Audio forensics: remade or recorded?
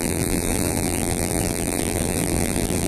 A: remade